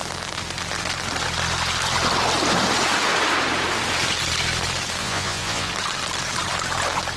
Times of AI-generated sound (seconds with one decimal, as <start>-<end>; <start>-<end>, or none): 5.0-5.7